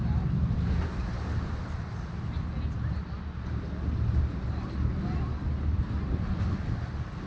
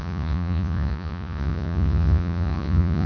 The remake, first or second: second